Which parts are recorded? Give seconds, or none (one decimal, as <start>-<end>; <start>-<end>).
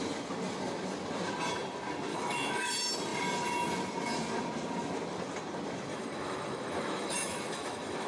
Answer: 0.0-2.1; 2.7-5.9